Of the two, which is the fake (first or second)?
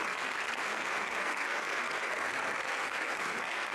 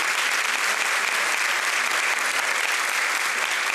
first